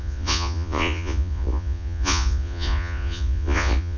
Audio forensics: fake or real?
fake